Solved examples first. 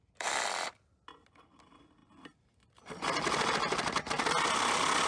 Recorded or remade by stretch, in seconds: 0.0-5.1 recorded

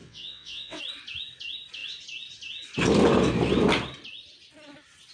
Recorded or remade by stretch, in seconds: 0.0-0.8 remade; 0.8-5.1 recorded

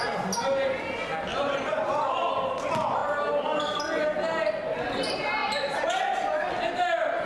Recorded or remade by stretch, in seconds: 0.0-1.3 recorded; 1.3-2.3 remade; 2.3-7.3 recorded

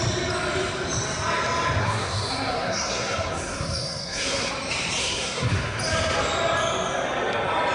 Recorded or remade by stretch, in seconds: 0.0-1.8 recorded; 1.8-4.5 remade; 4.5-5.0 recorded; 5.0-5.8 remade; 5.8-7.7 recorded

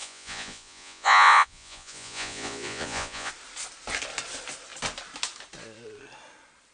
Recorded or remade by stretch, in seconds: 0.0-3.3 remade; 3.3-6.7 recorded

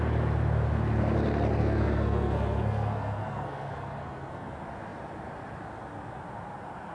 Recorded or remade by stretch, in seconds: 0.0-1.6 recorded; 1.6-4.5 remade; 4.5-6.9 recorded